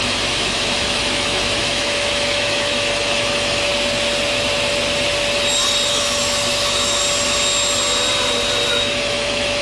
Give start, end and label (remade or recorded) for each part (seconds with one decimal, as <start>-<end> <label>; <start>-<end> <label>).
0.0-3.7 remade; 3.7-5.9 recorded; 5.9-7.0 remade; 7.0-8.7 recorded; 8.7-9.6 remade

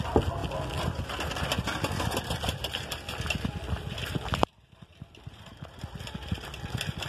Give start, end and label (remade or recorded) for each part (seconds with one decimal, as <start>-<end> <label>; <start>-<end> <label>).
0.0-7.1 recorded